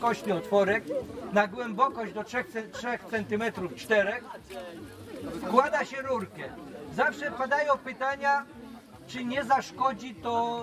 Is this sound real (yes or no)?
yes